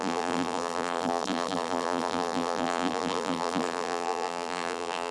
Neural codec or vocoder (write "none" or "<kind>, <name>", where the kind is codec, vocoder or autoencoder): vocoder, BigVGAN v2